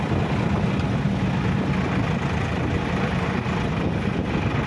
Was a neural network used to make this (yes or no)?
no